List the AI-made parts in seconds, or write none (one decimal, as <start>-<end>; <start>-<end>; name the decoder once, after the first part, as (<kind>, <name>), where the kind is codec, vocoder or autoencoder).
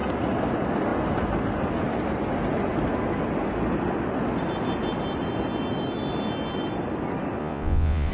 7.4-8.1 (vocoder, Vocos)